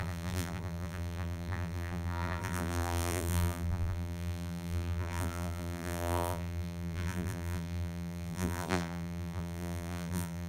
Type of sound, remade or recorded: remade